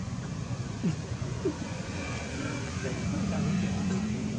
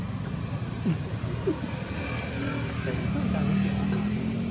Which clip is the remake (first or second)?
first